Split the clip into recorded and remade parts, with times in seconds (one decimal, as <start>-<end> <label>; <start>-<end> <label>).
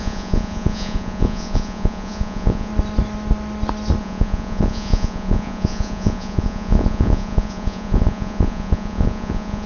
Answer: 0.0-2.7 remade; 2.7-4.0 recorded; 4.0-9.7 remade